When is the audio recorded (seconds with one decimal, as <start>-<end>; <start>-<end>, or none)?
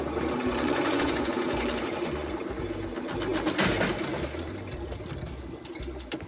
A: 0.0-0.4; 2.3-6.3